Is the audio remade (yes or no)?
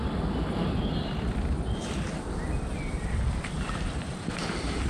no